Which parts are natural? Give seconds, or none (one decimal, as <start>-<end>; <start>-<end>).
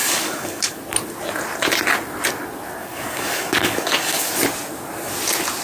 0.8-2.8; 4.3-5.6